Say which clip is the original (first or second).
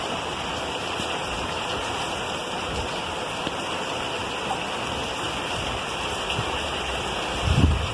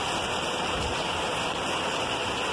second